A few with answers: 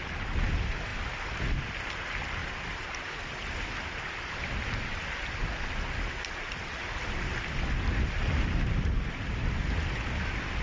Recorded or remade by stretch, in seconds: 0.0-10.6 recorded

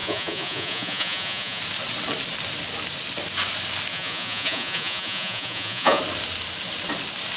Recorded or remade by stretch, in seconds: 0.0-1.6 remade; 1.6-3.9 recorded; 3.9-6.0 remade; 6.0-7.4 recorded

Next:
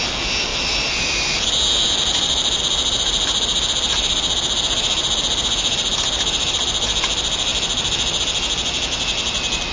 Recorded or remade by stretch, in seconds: 0.0-9.7 recorded

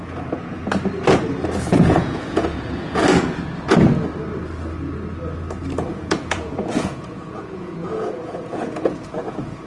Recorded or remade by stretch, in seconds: 0.0-0.6 remade; 0.6-1.6 recorded; 1.6-3.0 remade; 3.0-5.9 recorded; 5.9-9.7 remade

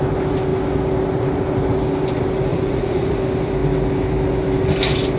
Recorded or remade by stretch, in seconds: 0.0-2.5 recorded; 2.5-3.2 remade; 3.2-5.2 recorded

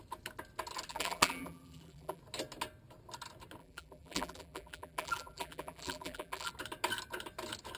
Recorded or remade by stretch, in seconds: 0.0-0.9 recorded; 0.9-2.2 remade; 2.2-3.6 recorded; 3.6-6.5 remade; 6.5-7.8 recorded